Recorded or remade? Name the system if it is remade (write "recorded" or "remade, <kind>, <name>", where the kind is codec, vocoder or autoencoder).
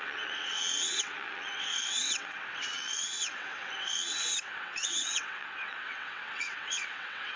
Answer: remade, vocoder, WaveNeXt